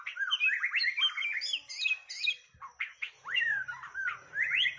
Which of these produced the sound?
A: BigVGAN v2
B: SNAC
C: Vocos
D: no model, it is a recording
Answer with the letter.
D